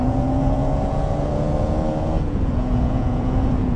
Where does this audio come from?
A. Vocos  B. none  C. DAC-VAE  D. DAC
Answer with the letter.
A